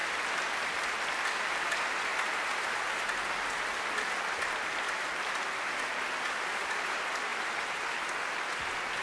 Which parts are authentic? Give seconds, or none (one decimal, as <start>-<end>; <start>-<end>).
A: 0.0-9.0